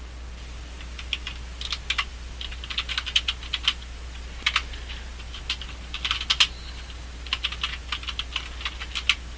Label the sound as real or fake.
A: real